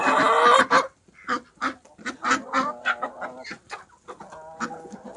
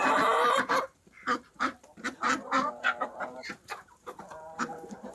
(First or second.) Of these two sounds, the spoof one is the second